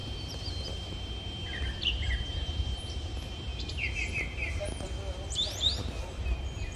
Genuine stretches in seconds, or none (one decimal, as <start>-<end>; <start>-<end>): none